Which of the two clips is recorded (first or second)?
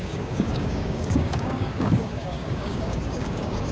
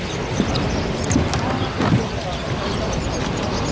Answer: second